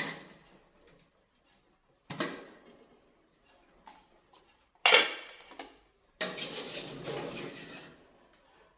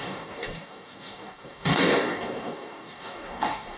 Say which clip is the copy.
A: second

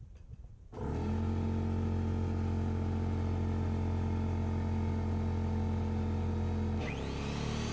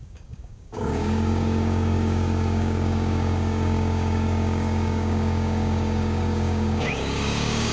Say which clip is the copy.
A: second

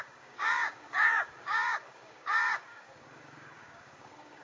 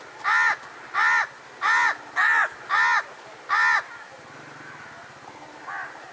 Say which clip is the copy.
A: first